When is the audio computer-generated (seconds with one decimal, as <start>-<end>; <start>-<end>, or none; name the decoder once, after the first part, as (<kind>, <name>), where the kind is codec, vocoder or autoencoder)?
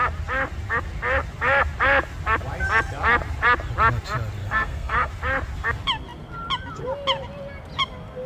4.4-5.1 (codec, SNAC)